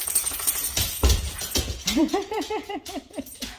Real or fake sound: fake